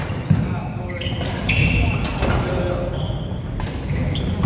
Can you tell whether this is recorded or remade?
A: recorded